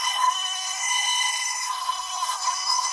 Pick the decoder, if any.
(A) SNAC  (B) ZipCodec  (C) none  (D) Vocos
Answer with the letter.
A